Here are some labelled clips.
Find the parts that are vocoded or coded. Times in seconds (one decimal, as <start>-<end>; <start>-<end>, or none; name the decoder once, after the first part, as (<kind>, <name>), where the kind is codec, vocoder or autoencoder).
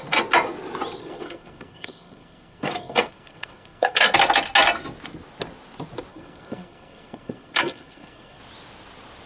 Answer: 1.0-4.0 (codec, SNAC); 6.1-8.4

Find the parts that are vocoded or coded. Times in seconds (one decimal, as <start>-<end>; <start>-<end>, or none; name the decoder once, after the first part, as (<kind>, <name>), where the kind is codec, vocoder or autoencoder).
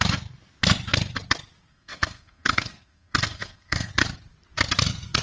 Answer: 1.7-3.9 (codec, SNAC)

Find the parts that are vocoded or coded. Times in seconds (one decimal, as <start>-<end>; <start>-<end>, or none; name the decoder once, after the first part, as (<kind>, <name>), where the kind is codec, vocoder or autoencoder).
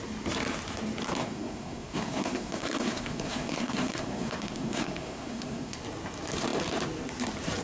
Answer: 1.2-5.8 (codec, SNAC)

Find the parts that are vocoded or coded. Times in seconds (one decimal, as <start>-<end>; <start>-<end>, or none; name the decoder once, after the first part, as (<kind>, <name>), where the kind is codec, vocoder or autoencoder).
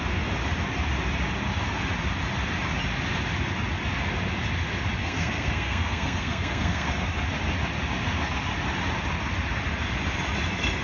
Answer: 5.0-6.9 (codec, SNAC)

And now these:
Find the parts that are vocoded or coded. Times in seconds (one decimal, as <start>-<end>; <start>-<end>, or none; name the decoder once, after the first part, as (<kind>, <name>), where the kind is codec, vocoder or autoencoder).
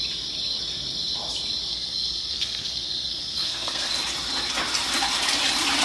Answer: 1.7-3.9 (codec, SNAC)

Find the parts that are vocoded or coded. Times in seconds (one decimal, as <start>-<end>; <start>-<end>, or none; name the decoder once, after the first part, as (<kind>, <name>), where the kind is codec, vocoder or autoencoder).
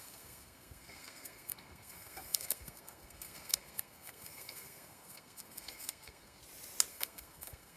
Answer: 0.0-6.4 (codec, SNAC); 6.9-7.8